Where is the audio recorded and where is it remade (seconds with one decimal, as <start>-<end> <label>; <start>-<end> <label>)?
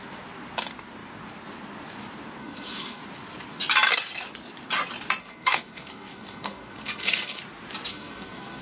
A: 0.0-2.4 recorded; 2.4-3.0 remade; 3.0-5.2 recorded; 5.2-7.4 remade; 7.4-7.9 recorded; 7.9-8.6 remade